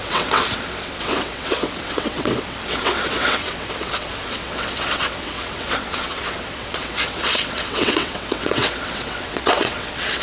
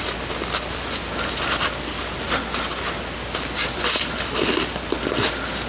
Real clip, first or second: second